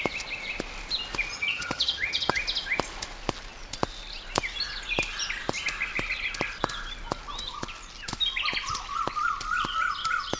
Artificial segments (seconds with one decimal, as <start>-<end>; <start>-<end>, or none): 1.3-2.4